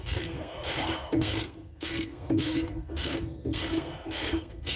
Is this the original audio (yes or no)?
no